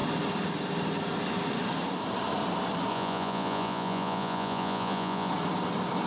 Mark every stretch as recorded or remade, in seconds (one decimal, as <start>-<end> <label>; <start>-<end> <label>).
0.0-2.9 recorded; 2.9-5.3 remade; 5.3-6.1 recorded